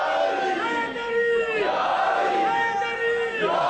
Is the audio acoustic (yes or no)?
yes